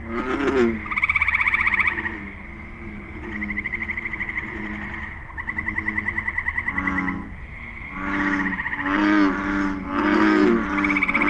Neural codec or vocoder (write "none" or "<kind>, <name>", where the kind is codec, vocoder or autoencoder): none